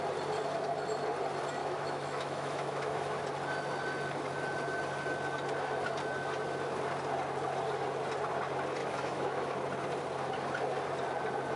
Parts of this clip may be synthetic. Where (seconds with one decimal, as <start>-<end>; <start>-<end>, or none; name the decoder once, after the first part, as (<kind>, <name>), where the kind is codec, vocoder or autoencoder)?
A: 1.6-3.2 (autoencoder, DAC-VAE); 8.8-9.5